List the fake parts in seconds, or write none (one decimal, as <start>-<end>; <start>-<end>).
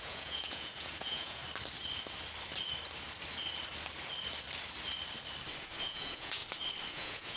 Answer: 0.0-1.4; 5.8-6.4; 6.9-7.4